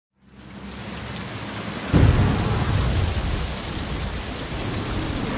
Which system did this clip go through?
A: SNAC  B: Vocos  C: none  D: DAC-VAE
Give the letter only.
C